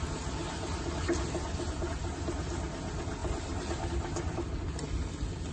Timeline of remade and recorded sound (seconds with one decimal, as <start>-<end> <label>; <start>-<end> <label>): 0.0-5.5 recorded